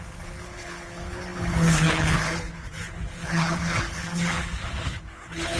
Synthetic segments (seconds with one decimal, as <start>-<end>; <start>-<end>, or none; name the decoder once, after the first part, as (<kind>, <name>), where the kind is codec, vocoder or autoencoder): 0.0-5.6 (codec, HILCodec)